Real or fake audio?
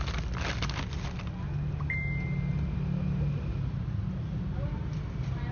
real